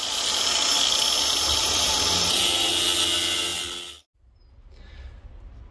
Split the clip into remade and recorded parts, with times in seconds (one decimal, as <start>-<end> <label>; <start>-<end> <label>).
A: 0.0-1.6 recorded; 1.6-2.7 remade; 2.7-5.7 recorded